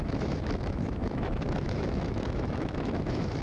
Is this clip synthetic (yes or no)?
yes